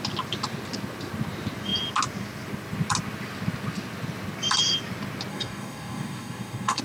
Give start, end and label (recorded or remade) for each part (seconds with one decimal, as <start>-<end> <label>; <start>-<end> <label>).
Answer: 0.0-5.3 recorded; 5.3-6.8 remade